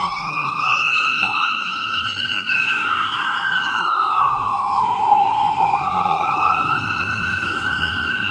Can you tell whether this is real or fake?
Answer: fake